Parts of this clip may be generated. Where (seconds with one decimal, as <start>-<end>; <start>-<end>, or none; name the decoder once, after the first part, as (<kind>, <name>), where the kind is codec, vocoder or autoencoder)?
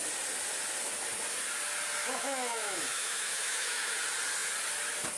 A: 2.0-3.9 (autoencoder, DAC-VAE)